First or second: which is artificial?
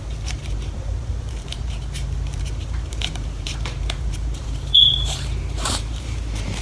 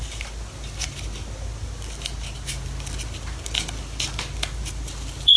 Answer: first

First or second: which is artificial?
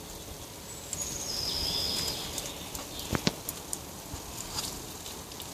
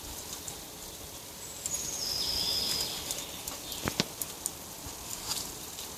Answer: second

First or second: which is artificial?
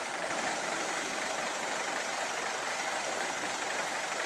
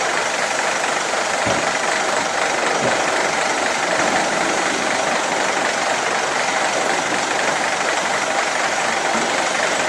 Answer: first